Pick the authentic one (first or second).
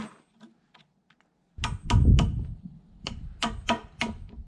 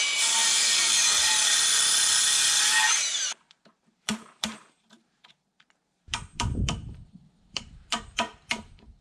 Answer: first